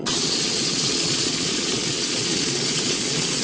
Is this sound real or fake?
fake